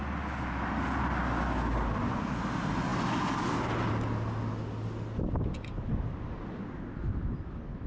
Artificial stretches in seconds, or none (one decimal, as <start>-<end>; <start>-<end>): none

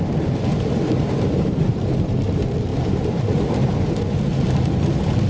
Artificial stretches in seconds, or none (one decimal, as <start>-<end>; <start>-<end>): 0.5-1.9; 2.7-3.2